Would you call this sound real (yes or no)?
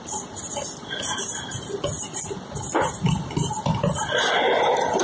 yes